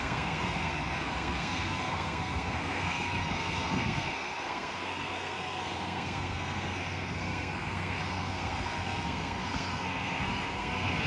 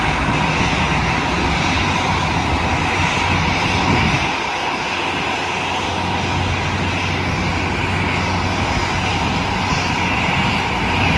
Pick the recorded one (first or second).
second